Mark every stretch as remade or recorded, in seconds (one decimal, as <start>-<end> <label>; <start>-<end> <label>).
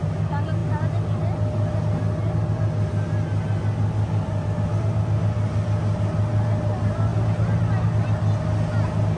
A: 0.0-9.2 recorded